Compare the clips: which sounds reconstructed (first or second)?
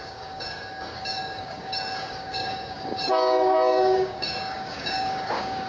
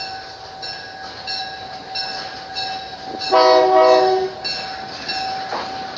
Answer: first